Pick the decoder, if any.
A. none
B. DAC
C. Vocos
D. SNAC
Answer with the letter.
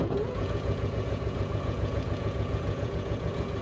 C